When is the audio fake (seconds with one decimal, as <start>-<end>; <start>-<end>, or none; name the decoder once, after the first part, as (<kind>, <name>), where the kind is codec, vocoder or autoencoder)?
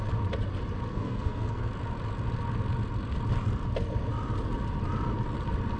0.9-1.7 (codec, SNAC)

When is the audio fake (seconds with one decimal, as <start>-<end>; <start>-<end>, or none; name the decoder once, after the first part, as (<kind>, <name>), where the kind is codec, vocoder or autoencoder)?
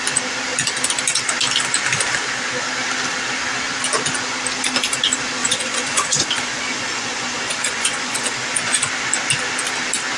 5.4-8.9 (vocoder, Vocos)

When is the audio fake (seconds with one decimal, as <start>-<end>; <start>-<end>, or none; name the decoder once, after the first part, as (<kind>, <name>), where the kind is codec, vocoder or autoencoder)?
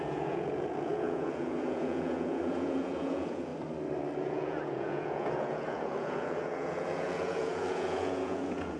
0.0-3.5 (vocoder, Vocos); 4.2-8.8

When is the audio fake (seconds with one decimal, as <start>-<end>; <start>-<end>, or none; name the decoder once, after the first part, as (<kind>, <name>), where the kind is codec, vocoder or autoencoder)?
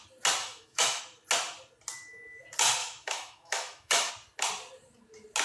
0.4-1.0 (autoencoder, DAC-VAE); 2.8-4.1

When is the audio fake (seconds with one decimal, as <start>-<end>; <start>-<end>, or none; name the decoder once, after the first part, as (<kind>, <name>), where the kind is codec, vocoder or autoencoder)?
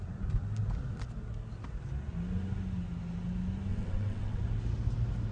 3.7-4.4 (vocoder, WaveNeXt)